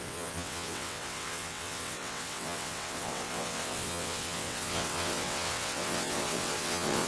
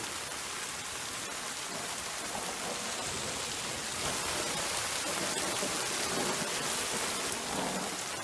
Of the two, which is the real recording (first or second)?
second